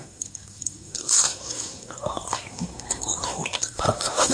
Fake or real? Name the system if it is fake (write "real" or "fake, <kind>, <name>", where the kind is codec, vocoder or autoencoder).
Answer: fake, codec, SNAC